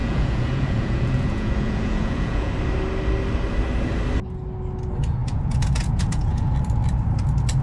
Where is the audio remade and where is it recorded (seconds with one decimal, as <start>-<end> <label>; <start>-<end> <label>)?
0.0-2.5 remade; 2.5-5.2 recorded; 5.2-6.5 remade; 6.5-7.6 recorded